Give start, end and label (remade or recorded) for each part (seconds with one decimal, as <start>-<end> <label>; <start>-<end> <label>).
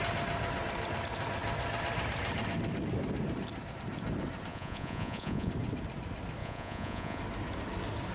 0.0-4.5 recorded; 4.5-5.5 remade; 5.5-6.4 recorded; 6.4-7.2 remade; 7.2-8.1 recorded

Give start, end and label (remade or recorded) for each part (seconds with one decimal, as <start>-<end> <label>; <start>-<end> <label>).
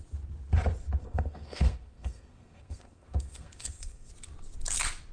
0.0-1.0 recorded; 1.0-4.1 remade; 4.1-5.1 recorded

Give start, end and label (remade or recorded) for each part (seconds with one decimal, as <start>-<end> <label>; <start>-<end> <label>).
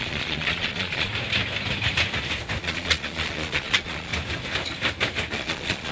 0.0-1.1 remade; 1.1-2.6 recorded; 2.6-4.1 remade; 4.1-5.3 recorded; 5.3-5.9 remade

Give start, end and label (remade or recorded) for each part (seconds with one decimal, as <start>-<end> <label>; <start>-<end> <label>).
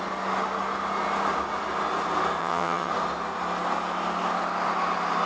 0.0-2.4 recorded; 2.4-2.9 remade; 2.9-5.3 recorded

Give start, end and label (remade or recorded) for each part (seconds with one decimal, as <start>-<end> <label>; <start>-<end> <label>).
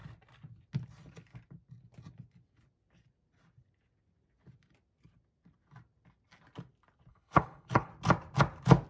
0.0-7.1 recorded; 7.1-7.9 remade; 7.9-8.9 recorded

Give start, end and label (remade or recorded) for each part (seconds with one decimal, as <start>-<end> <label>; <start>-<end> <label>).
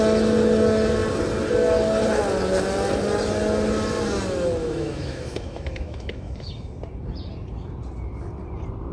0.0-4.6 recorded; 4.6-6.5 remade; 6.5-8.9 recorded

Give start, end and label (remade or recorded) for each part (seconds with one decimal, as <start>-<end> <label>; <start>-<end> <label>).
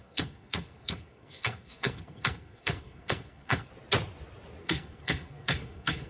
0.0-3.7 remade; 3.7-4.6 recorded; 4.6-6.1 remade